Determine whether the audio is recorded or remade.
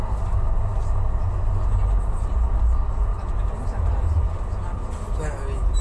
recorded